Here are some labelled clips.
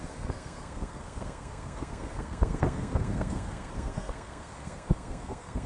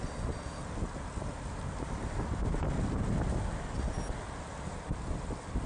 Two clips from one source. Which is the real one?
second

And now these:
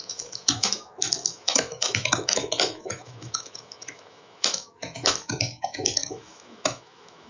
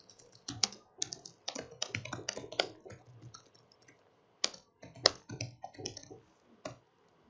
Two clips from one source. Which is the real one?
second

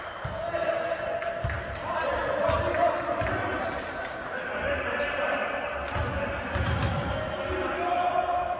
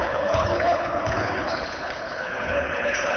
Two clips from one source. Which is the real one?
first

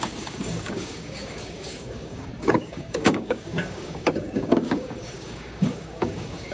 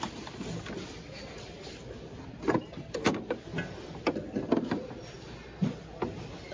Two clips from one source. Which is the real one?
second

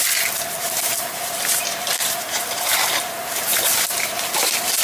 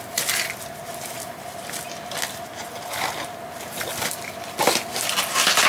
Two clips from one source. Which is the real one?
second